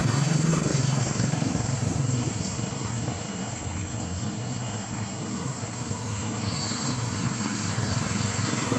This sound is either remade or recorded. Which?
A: remade